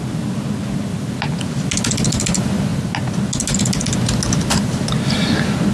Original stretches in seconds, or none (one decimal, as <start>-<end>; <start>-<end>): 0.0-5.7